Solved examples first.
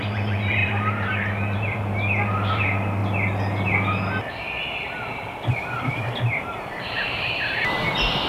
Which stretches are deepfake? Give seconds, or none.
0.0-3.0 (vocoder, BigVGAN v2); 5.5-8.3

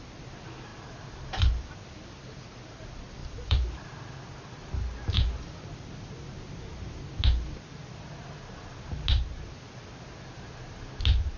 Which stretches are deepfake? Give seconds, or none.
0.7-1.7 (vocoder, BigVGAN v2); 3.2-3.9

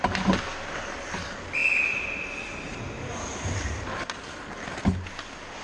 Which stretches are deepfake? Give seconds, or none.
none

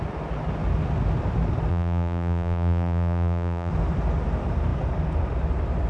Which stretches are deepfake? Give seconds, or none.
1.7-3.7 (vocoder, BigVGAN v2)

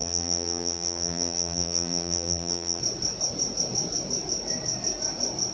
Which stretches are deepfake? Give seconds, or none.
0.0-2.8 (vocoder, BigVGAN v2)

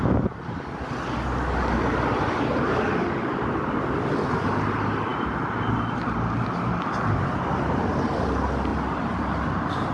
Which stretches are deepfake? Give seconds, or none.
8.7-9.9 (vocoder, BigVGAN v2)